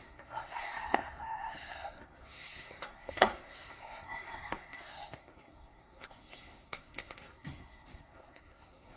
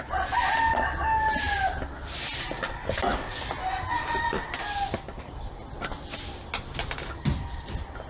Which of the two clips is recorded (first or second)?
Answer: second